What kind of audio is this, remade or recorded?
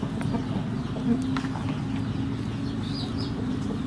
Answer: recorded